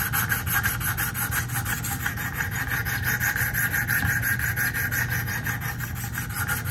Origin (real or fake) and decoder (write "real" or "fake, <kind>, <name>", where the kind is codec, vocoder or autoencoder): real